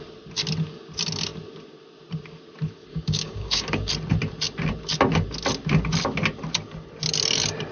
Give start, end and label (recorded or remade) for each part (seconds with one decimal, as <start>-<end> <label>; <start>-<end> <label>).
0.0-2.9 recorded; 2.9-3.9 remade; 3.9-7.7 recorded